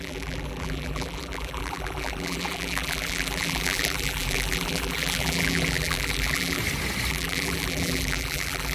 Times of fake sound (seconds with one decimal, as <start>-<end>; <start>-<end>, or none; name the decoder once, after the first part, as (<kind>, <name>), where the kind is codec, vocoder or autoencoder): 0.0-6.6 (vocoder, BigVGAN v2); 7.1-8.7